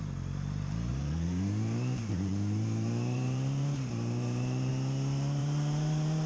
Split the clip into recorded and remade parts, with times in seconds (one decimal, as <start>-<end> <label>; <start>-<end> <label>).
0.0-0.9 recorded; 0.9-4.7 remade; 4.7-5.4 recorded; 5.4-6.3 remade